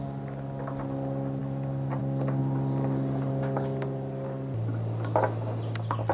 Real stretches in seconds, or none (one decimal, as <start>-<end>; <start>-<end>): 0.0-1.4; 2.0-2.4